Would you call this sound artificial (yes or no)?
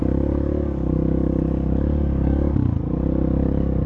yes